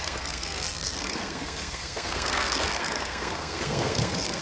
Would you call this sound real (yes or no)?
no